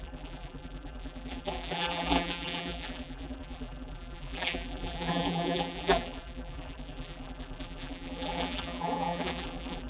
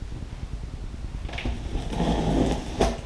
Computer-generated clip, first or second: first